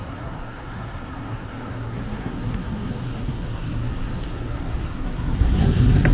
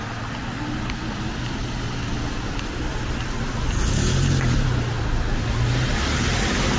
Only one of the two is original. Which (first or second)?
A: second